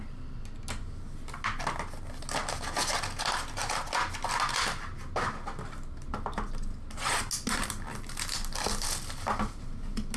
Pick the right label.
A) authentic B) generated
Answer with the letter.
A